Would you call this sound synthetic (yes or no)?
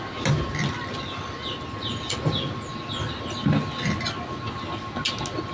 no